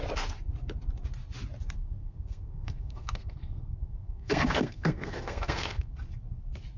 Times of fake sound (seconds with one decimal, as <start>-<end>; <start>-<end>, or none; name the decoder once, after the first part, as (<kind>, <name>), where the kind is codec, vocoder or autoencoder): 1.8-5.9 (codec, SNAC)